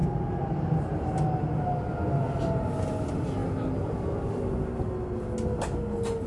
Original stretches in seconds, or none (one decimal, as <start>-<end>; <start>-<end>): 0.0-6.3